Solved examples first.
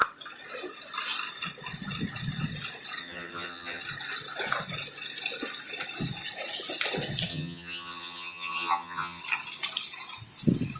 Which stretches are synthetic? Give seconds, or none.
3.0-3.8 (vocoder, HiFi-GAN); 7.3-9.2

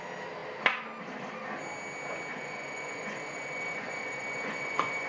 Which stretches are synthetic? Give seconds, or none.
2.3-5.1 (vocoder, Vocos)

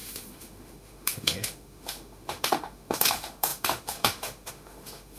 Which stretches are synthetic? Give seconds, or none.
0.0-5.2 (autoencoder, DAC-VAE)